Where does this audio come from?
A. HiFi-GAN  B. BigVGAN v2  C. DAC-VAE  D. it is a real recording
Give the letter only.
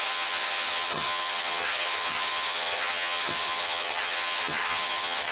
A